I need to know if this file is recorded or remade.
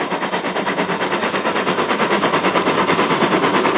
recorded